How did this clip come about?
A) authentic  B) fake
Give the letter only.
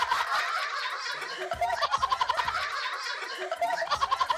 B